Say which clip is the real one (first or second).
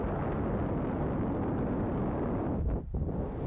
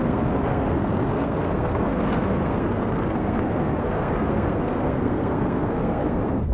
first